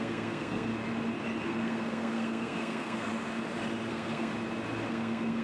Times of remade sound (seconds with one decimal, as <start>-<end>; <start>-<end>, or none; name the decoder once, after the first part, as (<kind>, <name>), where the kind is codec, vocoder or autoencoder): 0.0-0.7 (codec, SNAC); 1.4-3.1; 3.9-4.3; 4.9-5.4

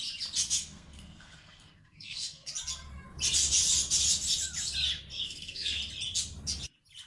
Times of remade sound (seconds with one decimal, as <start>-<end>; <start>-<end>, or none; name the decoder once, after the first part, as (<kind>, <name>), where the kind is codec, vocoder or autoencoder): 0.6-2.5 (codec, SNAC); 5.1-5.8

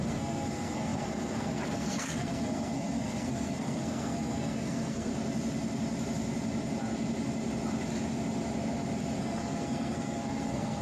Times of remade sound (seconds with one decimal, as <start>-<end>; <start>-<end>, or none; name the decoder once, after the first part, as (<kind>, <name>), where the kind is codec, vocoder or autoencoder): 0.0-5.1 (codec, SNAC); 9.2-10.8

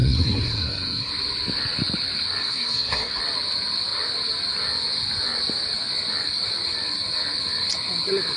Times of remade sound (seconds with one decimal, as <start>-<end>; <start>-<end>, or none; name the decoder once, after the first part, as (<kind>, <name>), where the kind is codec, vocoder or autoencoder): 0.0-1.1 (codec, SNAC); 2.4-3.2